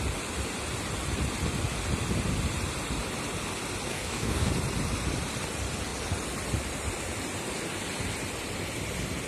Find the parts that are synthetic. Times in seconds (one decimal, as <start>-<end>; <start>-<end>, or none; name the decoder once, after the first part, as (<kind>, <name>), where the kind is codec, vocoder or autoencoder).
3.9-4.5 (codec, DAC)